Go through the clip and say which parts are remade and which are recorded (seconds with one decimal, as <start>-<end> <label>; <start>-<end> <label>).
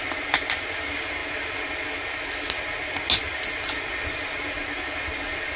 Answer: 0.0-5.6 recorded